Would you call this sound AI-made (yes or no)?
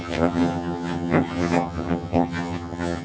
yes